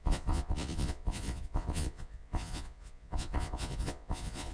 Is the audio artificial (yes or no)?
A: yes